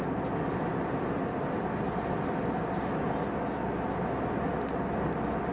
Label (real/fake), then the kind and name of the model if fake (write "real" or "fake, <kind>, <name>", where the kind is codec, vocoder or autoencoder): real